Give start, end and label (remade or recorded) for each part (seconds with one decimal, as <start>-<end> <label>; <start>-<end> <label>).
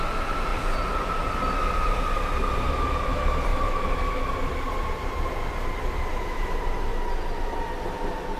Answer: 0.0-3.5 recorded; 3.5-4.3 remade; 4.3-6.1 recorded; 6.1-6.6 remade; 6.6-8.4 recorded